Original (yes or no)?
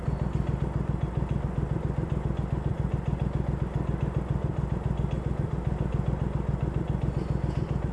yes